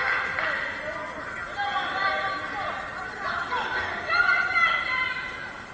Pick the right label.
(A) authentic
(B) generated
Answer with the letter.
A